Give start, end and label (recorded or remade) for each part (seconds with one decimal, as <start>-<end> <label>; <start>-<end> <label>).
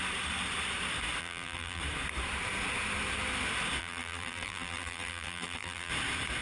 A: 0.0-1.2 recorded; 1.2-1.8 remade; 1.8-3.8 recorded; 3.8-5.9 remade; 5.9-6.4 recorded